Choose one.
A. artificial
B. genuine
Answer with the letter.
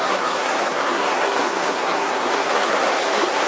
A